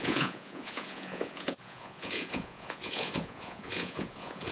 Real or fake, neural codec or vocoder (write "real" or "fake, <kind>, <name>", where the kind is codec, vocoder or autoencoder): fake, vocoder, Vocos